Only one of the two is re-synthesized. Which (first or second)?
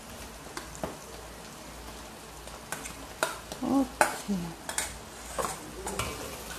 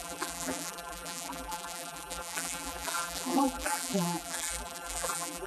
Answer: second